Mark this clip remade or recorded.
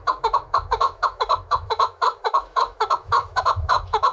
remade